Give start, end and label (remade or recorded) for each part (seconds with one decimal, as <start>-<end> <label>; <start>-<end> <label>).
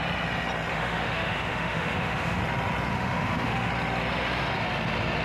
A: 0.0-0.7 recorded; 0.7-2.4 remade; 2.4-2.9 recorded; 2.9-3.7 remade; 3.7-5.2 recorded